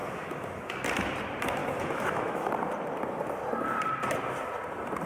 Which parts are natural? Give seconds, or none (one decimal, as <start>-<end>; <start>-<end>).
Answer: 0.7-1.6; 2.5-5.1